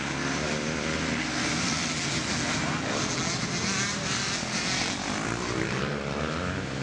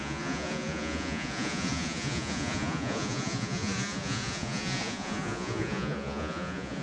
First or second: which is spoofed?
second